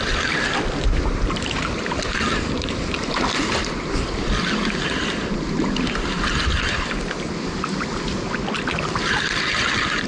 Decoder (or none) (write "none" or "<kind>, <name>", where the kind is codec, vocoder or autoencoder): none